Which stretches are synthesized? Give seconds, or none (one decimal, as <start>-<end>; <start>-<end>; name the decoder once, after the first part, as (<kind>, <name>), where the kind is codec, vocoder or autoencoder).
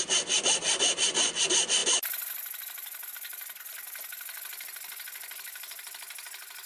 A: none